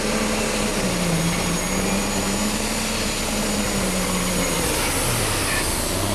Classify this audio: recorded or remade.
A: recorded